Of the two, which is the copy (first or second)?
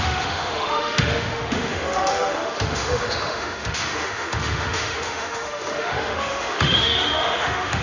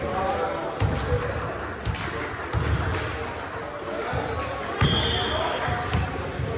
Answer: first